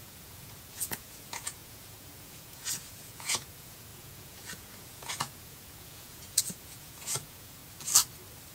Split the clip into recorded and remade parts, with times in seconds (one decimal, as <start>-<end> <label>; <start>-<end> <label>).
0.0-7.6 remade; 7.6-8.5 recorded